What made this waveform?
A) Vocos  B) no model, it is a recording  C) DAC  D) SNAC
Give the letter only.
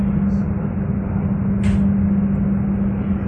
B